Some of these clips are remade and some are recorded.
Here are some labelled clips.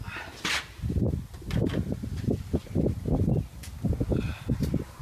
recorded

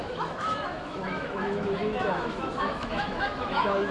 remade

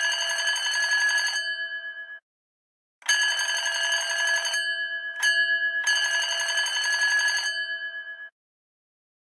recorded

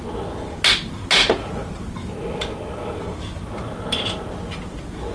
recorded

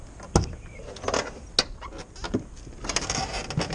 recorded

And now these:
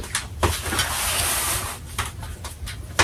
recorded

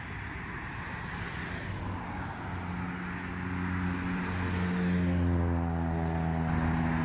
recorded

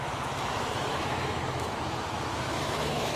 remade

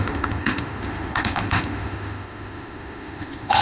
remade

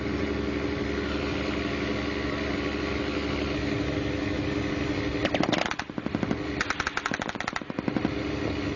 recorded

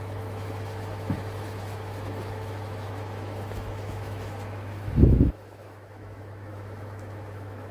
remade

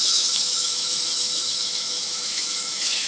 remade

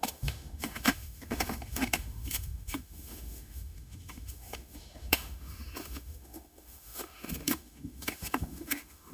remade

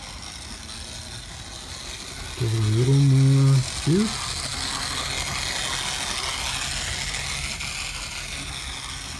recorded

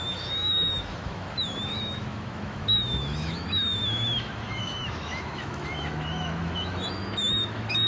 remade